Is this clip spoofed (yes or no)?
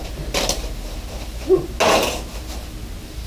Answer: no